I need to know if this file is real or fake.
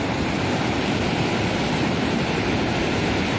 fake